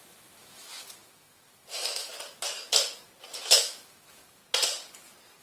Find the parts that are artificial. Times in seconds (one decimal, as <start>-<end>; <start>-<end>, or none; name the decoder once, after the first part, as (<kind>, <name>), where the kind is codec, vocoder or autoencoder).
0.0-2.1 (autoencoder, DAC-VAE); 3.4-4.4